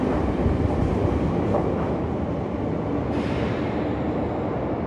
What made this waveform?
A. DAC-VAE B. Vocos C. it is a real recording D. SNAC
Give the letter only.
C